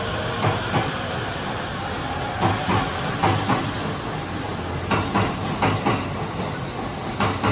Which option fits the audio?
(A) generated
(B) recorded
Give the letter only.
B